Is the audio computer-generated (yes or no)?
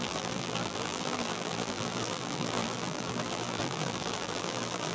yes